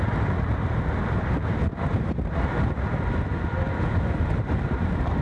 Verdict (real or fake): real